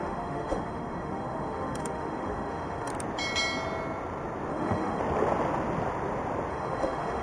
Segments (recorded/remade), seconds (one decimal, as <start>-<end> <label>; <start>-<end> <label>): 0.0-2.9 remade; 2.9-4.5 recorded; 4.5-5.0 remade; 5.0-6.5 recorded; 6.5-7.2 remade